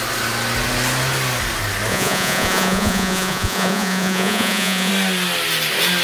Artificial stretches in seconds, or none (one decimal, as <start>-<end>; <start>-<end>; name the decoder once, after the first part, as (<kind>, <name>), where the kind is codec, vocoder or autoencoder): 1.9-4.9 (vocoder, Vocos)